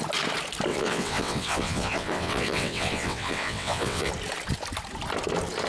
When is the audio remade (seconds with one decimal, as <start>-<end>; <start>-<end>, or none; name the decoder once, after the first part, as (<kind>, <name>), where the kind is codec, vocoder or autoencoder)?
0.7-4.1 (vocoder, WaveNeXt)